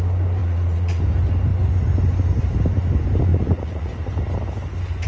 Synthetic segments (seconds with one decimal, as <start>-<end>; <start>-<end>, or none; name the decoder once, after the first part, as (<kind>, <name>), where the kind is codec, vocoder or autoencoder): 0.4-1.0 (vocoder, Vocos); 3.3-3.9